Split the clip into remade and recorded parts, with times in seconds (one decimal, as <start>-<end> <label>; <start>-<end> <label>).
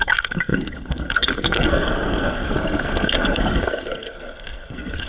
0.0-5.1 remade